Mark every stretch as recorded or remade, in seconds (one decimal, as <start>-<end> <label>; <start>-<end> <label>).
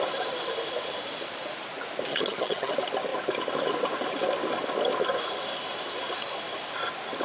0.0-2.1 recorded; 2.1-2.7 remade; 2.7-7.2 recorded